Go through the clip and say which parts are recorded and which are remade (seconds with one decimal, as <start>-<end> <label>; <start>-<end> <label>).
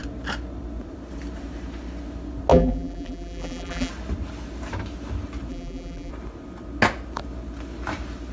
0.0-2.5 recorded; 2.5-3.9 remade; 3.9-5.5 recorded; 5.5-6.1 remade; 6.1-8.3 recorded